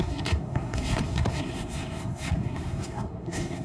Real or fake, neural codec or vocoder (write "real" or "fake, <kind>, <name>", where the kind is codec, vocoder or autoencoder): fake, codec, SNAC